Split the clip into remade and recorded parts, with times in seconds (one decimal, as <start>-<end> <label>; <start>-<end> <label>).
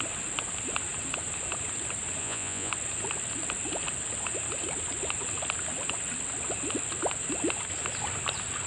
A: 0.0-2.2 recorded; 2.2-2.7 remade; 2.7-8.7 recorded